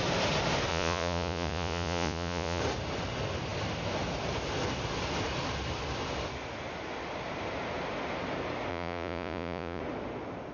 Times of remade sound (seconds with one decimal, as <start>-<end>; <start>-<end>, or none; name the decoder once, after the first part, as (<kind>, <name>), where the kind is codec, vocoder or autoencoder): 0.7-2.6 (vocoder, Vocos); 8.7-9.8